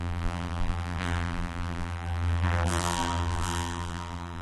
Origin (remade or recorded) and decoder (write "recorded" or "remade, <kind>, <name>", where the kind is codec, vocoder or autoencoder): remade, vocoder, BigVGAN v2